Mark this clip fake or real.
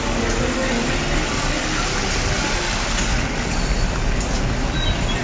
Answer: real